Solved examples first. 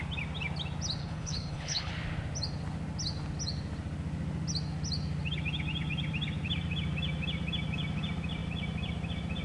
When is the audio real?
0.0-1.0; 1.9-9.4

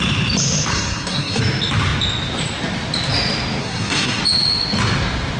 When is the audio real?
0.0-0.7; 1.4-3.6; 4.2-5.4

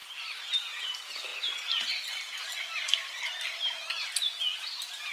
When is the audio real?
0.0-5.1

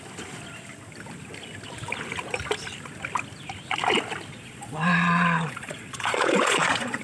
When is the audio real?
0.0-4.3